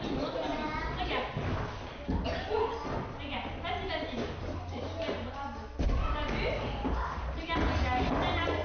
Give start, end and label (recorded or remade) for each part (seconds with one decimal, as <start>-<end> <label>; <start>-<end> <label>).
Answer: 0.0-8.6 recorded